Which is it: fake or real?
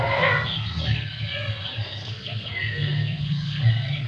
fake